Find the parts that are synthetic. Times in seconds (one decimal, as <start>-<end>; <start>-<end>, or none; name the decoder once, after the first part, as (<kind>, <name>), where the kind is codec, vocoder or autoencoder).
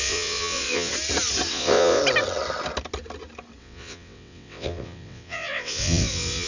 0.0-0.9 (vocoder, WaveNeXt); 1.5-2.0; 3.6-6.5